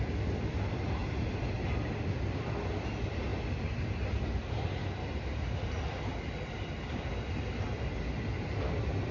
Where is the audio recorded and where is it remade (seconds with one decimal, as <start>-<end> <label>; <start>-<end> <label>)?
0.0-9.1 recorded